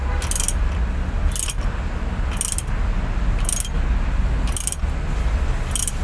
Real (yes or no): yes